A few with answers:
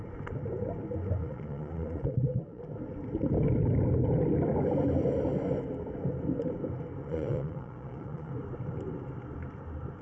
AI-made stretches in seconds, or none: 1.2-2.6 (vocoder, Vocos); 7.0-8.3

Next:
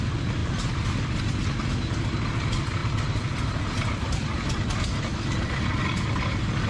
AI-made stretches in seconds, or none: none

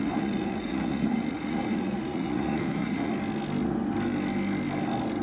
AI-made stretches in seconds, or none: 0.0-3.1 (vocoder, Vocos)

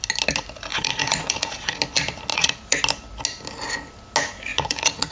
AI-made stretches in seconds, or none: 0.7-1.8 (vocoder, Vocos); 2.3-2.8; 4.5-5.1

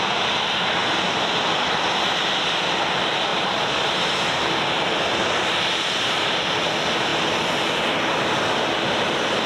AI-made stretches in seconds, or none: 3.3-4.6 (vocoder, BigVGAN v2); 5.2-6.4